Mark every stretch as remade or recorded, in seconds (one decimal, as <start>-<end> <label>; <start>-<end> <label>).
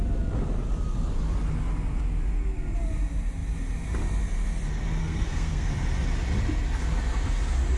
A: 0.0-5.0 recorded; 5.0-5.7 remade; 5.7-7.8 recorded